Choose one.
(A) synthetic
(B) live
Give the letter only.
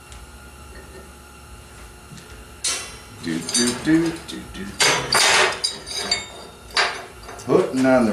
B